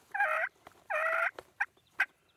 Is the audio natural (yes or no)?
no